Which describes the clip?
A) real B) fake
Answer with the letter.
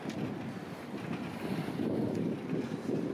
A